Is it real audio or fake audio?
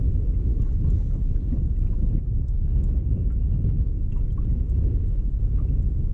real